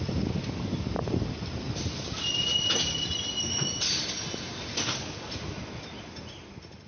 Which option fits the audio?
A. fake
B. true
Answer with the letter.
B